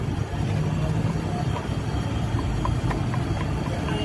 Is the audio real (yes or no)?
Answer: yes